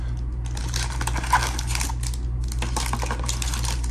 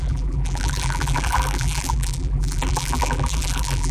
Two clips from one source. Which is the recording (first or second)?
first